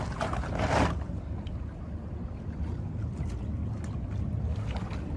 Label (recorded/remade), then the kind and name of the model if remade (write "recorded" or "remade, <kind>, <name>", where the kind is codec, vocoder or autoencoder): recorded